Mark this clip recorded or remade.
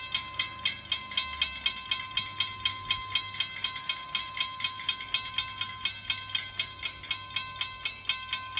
recorded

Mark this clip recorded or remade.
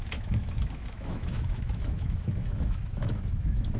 remade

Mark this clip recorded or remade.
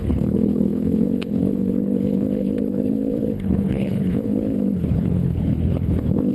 remade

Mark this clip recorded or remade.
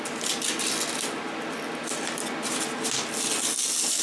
recorded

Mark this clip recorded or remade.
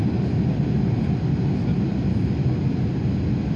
recorded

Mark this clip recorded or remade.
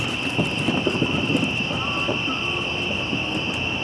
recorded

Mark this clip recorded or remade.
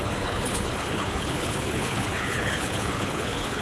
remade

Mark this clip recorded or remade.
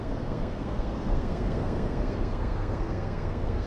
remade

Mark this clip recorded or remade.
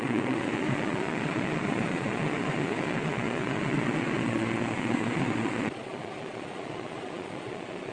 remade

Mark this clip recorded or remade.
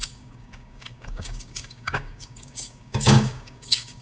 remade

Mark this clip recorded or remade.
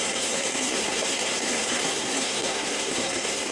remade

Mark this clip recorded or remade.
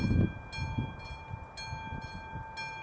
recorded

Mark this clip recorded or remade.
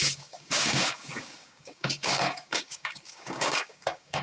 remade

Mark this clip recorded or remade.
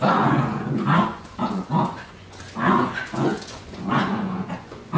remade